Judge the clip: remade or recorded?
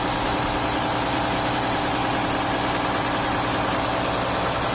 recorded